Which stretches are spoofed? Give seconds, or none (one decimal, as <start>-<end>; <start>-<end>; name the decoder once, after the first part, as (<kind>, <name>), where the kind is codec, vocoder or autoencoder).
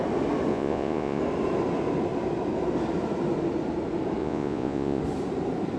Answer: 0.5-1.2 (vocoder, Vocos); 4.2-5.0